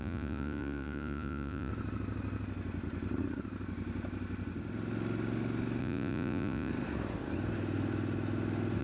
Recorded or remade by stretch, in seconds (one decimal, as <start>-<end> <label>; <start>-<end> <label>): 0.0-1.7 remade; 1.7-5.8 recorded; 5.8-6.7 remade; 6.7-8.8 recorded